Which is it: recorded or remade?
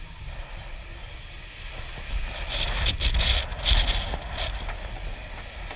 recorded